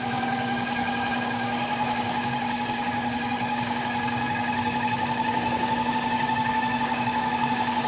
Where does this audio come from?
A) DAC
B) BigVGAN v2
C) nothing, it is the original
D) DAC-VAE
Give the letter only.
A